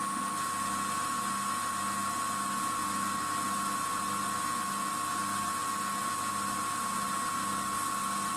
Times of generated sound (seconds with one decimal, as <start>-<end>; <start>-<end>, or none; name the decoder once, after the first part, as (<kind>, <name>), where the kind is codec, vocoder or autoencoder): none